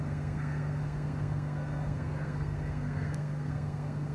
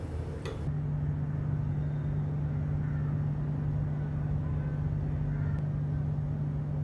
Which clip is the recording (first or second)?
second